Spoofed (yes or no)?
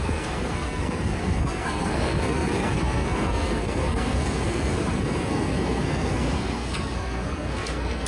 yes